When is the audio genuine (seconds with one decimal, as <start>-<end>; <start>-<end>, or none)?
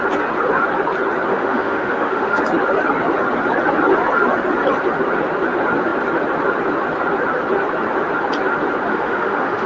0.0-1.3; 2.4-8.9